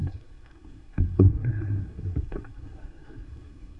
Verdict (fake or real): fake